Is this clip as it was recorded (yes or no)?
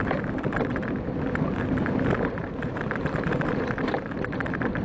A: no